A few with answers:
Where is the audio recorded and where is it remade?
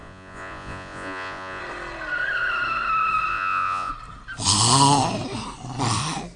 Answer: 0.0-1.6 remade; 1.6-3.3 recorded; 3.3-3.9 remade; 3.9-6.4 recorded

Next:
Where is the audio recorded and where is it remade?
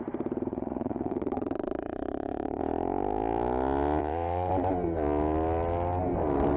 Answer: 0.0-0.5 recorded; 0.5-2.6 remade; 2.6-4.0 recorded; 4.0-4.5 remade; 4.5-6.6 recorded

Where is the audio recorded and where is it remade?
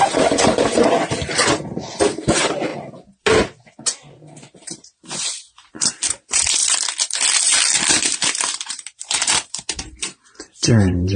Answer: 0.0-2.7 remade; 2.7-4.3 recorded; 4.3-6.6 remade; 6.6-7.9 recorded; 7.9-11.2 remade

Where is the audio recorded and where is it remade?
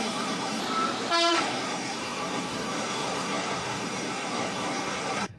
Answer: 0.0-0.6 remade; 0.6-1.3 recorded; 1.3-5.4 remade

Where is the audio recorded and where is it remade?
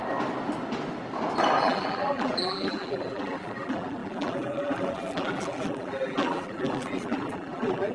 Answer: 0.0-1.6 recorded; 1.6-7.9 remade